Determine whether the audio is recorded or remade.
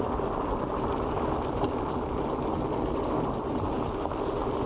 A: recorded